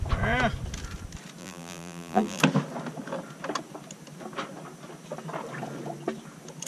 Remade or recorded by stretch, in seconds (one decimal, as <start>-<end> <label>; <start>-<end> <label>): 0.0-1.4 recorded; 1.4-2.4 remade; 2.4-6.7 recorded